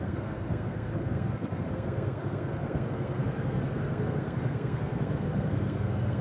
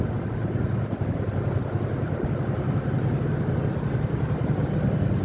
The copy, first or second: first